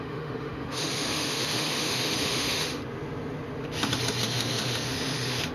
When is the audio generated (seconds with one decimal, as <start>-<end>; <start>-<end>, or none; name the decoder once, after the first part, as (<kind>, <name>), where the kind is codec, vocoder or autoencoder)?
0.0-2.8 (autoencoder, DAC-VAE); 4.2-5.5